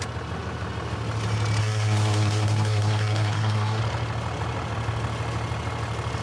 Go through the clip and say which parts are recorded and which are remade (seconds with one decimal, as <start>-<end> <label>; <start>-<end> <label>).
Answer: 0.0-1.6 recorded; 1.6-3.8 remade; 3.8-6.2 recorded